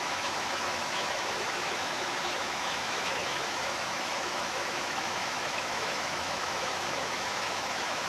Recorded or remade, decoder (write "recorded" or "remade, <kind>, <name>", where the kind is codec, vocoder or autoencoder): remade, autoencoder, DAC-VAE